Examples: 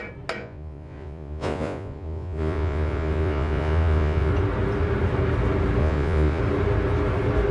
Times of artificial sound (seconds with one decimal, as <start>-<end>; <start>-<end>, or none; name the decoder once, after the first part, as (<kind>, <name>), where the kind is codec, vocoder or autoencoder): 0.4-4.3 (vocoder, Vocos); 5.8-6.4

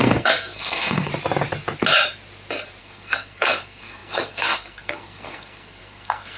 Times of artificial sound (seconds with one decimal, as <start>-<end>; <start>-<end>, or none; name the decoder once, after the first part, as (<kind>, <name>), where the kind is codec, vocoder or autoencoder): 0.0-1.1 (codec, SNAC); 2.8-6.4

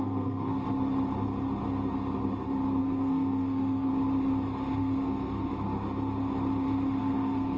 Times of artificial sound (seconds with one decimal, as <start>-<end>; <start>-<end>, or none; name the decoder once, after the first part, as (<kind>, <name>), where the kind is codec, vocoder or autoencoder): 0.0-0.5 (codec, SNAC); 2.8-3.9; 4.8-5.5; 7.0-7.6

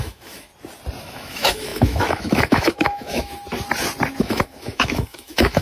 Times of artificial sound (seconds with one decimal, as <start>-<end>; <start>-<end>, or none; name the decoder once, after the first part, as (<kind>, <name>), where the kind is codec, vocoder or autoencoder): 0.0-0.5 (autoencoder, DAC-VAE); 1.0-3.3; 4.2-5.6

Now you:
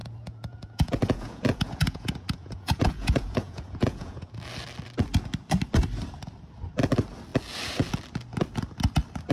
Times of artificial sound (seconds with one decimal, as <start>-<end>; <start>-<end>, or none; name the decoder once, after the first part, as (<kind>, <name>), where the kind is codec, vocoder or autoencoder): 0.0-4.3 (vocoder, Vocos)

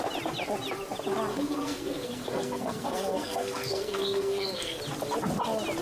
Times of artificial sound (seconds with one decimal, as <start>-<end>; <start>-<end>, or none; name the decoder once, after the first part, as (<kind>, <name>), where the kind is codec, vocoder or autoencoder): 1.3-4.8 (codec, SNAC)